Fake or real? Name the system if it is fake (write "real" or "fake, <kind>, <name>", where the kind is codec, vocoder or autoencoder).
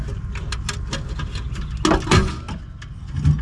real